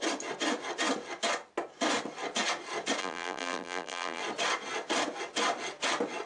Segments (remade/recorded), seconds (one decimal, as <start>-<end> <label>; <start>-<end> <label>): 0.0-3.0 recorded; 3.0-4.2 remade; 4.2-6.3 recorded